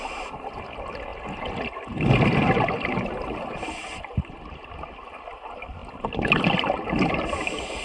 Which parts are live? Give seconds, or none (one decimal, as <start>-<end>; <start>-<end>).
0.0-7.8

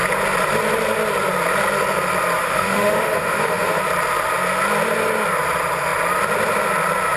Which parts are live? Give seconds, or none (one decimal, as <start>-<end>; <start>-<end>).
0.0-2.4; 3.8-7.2

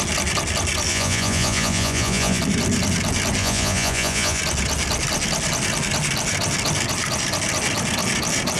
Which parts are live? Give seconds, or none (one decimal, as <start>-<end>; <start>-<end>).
0.0-0.9; 2.4-3.4; 4.4-8.6

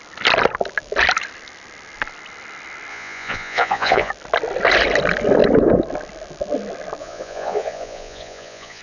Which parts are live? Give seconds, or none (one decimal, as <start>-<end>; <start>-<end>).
0.0-2.9; 4.1-7.0

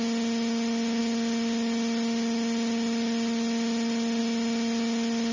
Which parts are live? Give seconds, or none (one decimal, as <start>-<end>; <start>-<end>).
0.0-5.3

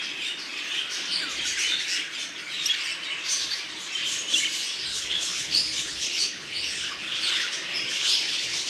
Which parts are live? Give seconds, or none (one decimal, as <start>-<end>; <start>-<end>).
0.0-4.9; 7.5-7.9